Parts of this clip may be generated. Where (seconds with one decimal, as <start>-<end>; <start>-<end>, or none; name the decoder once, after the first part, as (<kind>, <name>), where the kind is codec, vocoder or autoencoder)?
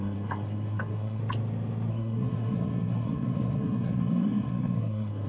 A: 0.0-1.2 (codec, SNAC); 1.9-5.3